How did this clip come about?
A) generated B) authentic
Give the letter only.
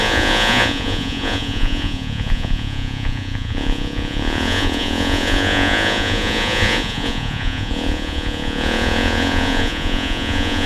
A